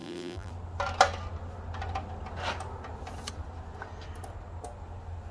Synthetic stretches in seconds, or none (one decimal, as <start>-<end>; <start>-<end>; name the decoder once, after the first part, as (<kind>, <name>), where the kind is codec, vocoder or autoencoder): 0.0-0.5 (vocoder, BigVGAN v2)